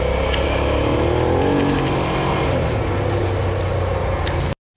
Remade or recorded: recorded